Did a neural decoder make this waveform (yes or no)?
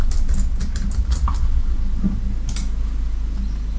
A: no